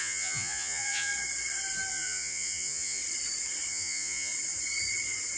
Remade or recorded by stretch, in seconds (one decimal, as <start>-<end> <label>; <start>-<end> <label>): 0.0-1.1 remade; 1.1-1.9 recorded; 1.9-3.0 remade; 3.0-3.7 recorded; 3.7-4.3 remade; 4.3-5.4 recorded